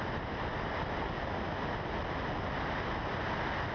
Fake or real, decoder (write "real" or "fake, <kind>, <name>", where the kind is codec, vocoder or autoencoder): real